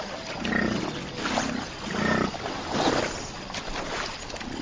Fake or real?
real